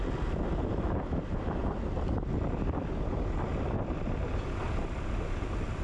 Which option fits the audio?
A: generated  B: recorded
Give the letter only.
B